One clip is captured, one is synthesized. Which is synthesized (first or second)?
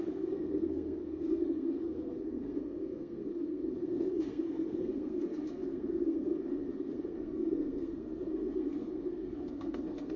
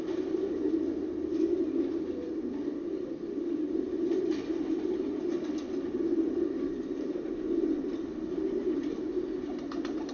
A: first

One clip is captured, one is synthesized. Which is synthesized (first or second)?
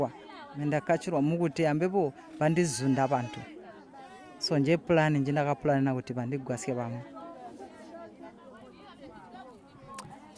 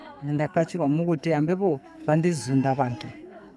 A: second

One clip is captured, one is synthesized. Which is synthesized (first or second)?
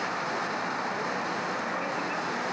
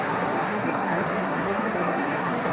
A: second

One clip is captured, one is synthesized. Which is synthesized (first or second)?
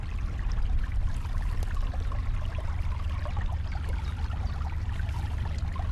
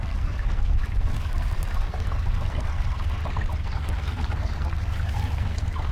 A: second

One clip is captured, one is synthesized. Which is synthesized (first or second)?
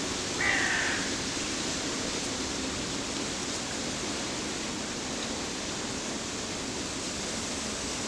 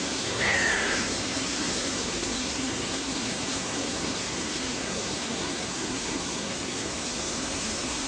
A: second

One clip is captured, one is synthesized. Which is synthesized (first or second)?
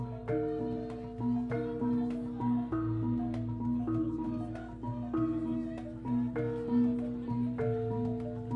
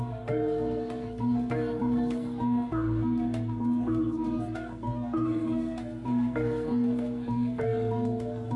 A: second